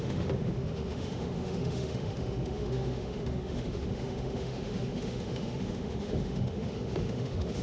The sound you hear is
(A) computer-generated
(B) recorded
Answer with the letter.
A